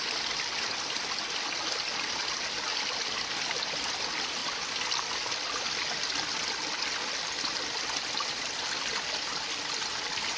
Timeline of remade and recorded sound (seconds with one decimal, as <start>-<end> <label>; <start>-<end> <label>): 0.0-10.4 recorded